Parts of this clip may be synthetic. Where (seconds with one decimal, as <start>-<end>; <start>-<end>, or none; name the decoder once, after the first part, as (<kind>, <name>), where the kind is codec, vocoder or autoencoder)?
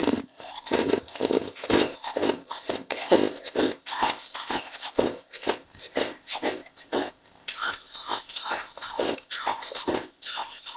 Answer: 0.0-10.8 (codec, ZipCodec)